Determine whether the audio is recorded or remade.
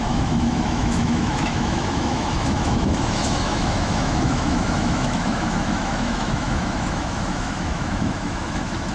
remade